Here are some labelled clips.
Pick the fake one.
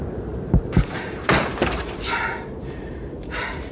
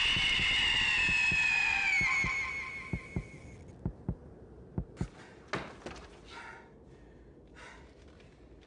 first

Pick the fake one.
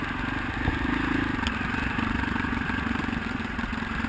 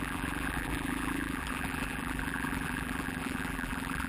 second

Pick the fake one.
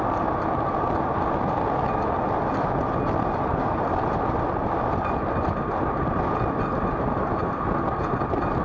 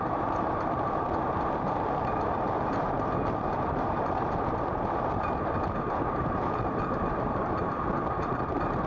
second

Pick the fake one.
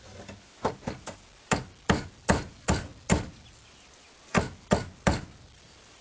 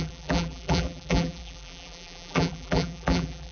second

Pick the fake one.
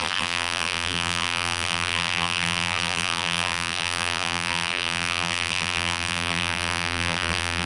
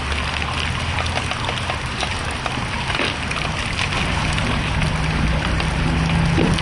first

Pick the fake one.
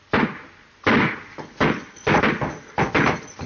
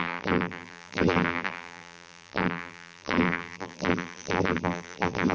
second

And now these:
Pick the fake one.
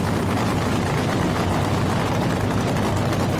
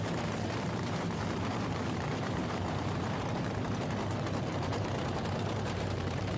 second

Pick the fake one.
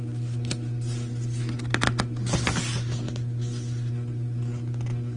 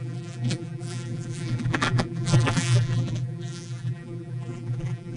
second